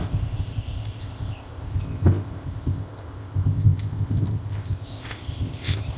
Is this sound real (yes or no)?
no